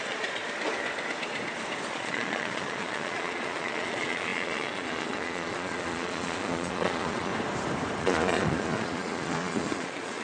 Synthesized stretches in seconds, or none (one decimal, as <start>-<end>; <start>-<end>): 0.0-0.4; 1.9-7.3; 8.0-10.2